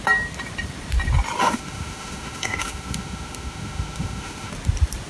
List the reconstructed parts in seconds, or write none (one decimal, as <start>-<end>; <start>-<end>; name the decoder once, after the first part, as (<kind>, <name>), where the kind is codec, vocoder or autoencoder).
1.4-4.5 (autoencoder, DAC-VAE)